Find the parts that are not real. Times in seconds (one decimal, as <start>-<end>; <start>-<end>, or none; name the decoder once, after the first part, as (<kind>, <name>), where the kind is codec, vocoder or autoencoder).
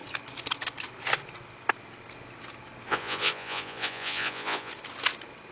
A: 2.9-4.7 (vocoder, Vocos)